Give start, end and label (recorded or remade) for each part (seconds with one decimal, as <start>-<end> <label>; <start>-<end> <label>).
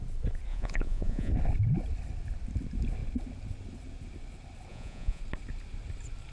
0.0-0.5 recorded; 0.5-1.3 remade; 1.3-4.7 recorded; 4.7-5.2 remade; 5.2-6.3 recorded